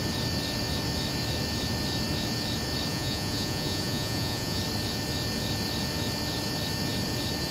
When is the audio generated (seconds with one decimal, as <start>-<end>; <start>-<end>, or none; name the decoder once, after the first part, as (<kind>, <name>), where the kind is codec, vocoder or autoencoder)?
2.9-4.6 (vocoder, Vocos)

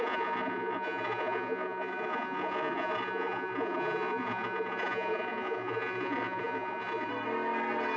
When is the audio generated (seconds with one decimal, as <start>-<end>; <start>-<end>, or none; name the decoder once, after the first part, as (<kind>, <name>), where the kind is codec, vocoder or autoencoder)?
0.0-7.1 (vocoder, Vocos)

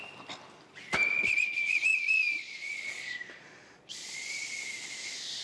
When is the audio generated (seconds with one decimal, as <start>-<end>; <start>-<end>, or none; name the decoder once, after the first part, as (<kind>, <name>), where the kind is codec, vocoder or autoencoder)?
1.2-4.4 (vocoder, Vocos)

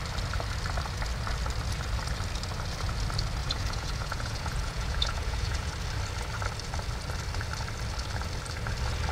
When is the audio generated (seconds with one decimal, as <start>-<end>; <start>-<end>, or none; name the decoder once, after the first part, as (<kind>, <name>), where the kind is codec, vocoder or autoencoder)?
3.4-5.7 (vocoder, Vocos)

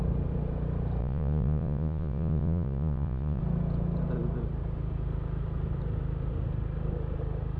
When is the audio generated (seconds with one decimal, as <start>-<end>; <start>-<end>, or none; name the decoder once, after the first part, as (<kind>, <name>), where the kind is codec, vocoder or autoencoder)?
1.0-3.4 (vocoder, Vocos)

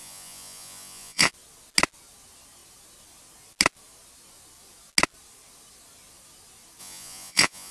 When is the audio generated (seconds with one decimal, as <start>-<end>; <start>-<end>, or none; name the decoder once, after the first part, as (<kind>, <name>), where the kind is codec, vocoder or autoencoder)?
0.0-1.3 (vocoder, Vocos); 6.8-7.7

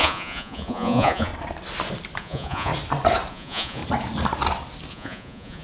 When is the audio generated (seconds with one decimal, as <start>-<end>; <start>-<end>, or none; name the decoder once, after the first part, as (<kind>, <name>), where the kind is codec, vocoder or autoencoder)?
0.0-1.3 (vocoder, Vocos); 2.2-2.7; 3.3-3.8; 4.9-5.6